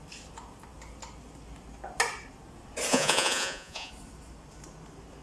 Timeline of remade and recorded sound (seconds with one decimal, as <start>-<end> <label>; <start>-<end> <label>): 0.0-2.9 recorded; 2.9-3.9 remade; 3.9-5.2 recorded